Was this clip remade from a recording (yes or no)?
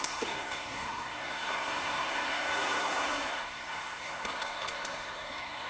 yes